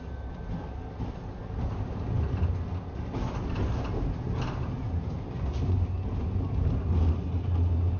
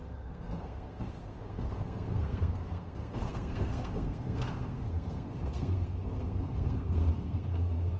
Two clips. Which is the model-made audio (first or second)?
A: second